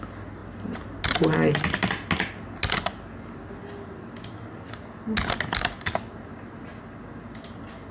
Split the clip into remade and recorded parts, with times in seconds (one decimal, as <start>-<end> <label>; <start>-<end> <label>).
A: 0.0-7.9 recorded